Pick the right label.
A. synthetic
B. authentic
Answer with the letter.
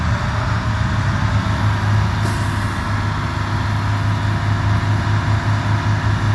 B